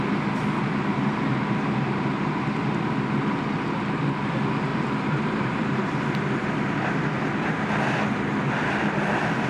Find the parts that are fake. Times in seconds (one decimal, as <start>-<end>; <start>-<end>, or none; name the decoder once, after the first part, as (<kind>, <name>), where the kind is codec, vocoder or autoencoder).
0.9-2.4 (vocoder, BigVGAN v2); 4.7-5.9